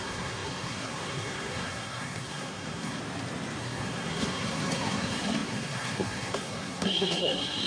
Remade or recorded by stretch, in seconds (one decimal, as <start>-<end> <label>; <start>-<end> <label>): 0.0-3.0 remade; 3.0-3.6 recorded; 3.6-7.7 remade